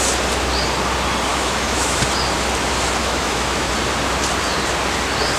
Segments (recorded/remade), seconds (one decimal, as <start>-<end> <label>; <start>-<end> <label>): 0.0-1.3 recorded; 1.3-2.0 remade; 2.0-3.0 recorded; 3.0-3.7 remade; 3.7-5.4 recorded